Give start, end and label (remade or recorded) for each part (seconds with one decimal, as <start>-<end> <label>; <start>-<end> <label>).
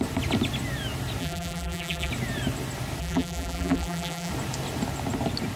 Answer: 0.0-1.2 recorded; 1.2-2.1 remade; 2.1-3.0 recorded; 3.0-4.3 remade; 4.3-5.6 recorded